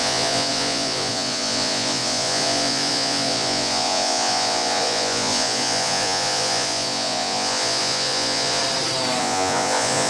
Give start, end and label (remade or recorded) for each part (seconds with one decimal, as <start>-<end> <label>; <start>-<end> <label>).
0.0-8.6 remade; 8.6-9.2 recorded; 9.2-10.1 remade